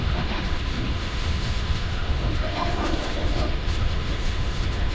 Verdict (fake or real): fake